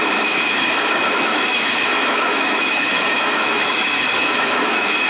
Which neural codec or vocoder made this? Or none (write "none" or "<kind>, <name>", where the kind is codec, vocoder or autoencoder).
autoencoder, DAC-VAE